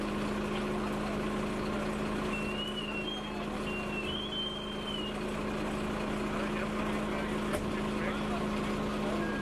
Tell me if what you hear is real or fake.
real